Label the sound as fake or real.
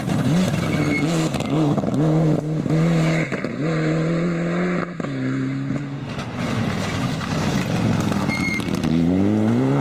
real